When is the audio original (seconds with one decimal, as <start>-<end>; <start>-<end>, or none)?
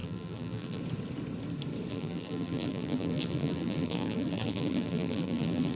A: 0.8-1.9